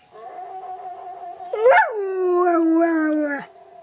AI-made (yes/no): no